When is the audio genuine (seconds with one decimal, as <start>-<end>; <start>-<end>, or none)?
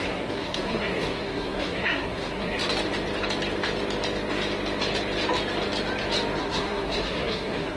2.6-6.4